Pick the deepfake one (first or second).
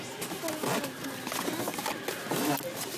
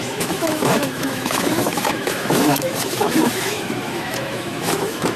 second